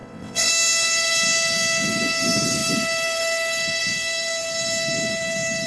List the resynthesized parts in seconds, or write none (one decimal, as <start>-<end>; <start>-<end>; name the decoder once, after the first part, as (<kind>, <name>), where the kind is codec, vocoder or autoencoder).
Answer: 0.0-0.5 (vocoder, WaveNeXt)